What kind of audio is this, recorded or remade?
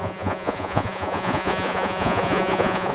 remade